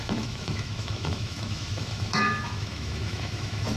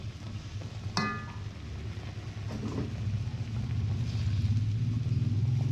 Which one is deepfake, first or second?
first